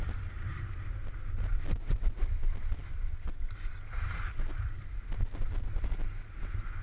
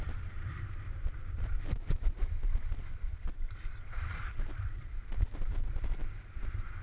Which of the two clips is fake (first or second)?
second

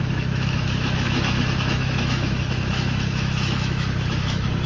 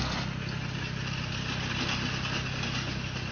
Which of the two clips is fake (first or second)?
first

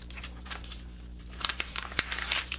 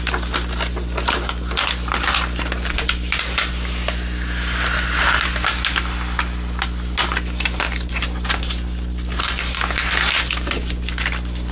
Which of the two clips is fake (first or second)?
first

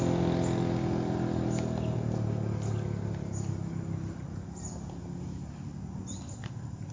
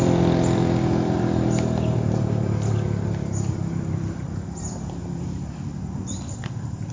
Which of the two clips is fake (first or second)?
second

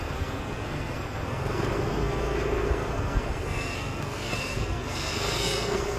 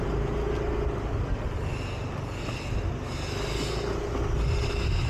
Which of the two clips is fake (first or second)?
first